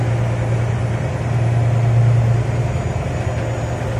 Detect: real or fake real